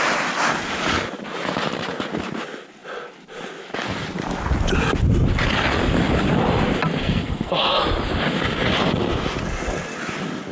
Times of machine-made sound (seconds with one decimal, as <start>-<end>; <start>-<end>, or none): 7.0-7.8